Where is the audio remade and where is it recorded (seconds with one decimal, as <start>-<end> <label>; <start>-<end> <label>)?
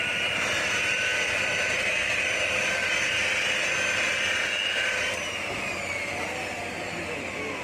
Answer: 0.0-7.6 recorded